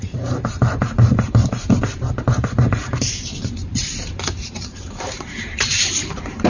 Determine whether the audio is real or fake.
fake